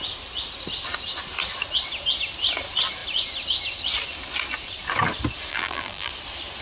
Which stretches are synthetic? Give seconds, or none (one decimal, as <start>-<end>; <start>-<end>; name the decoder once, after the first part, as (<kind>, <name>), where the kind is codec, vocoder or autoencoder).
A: 5.5-6.1 (vocoder, BigVGAN v2)